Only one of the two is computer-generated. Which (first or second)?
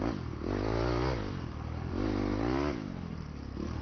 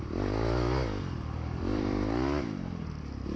second